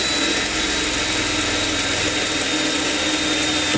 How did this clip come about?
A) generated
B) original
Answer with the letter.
B